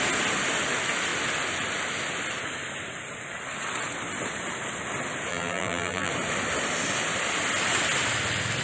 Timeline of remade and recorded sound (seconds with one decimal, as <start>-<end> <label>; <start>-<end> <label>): 0.0-5.3 recorded; 5.3-6.1 remade; 6.1-8.6 recorded